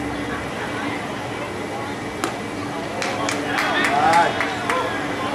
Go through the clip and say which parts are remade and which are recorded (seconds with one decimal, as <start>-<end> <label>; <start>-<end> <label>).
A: 0.0-5.3 recorded